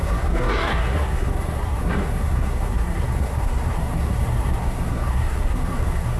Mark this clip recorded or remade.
remade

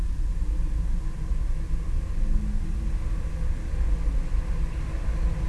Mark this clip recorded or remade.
recorded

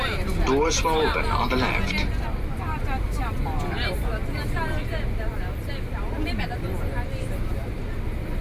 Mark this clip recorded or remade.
recorded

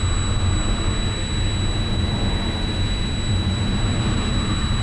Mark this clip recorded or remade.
recorded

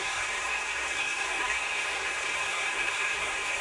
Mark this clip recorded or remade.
remade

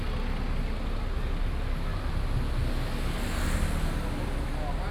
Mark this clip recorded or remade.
recorded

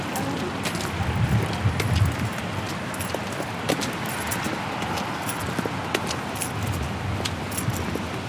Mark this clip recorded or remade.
recorded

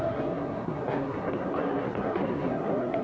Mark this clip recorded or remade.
remade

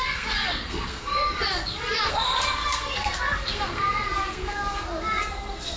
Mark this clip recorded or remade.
remade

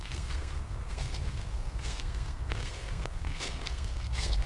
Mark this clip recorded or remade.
remade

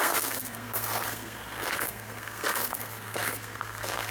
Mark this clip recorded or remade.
remade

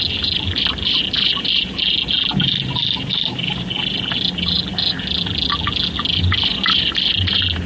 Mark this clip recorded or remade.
recorded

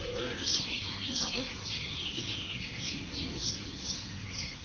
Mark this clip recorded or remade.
remade